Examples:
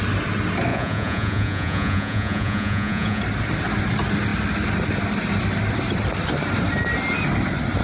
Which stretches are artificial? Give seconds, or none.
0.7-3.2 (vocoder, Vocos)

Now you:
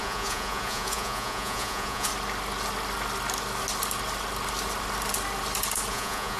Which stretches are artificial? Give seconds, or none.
0.0-2.1 (vocoder, Vocos); 5.9-6.4